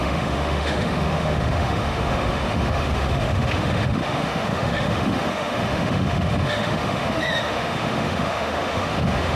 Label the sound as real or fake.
fake